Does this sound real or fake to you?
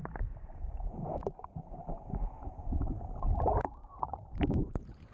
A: fake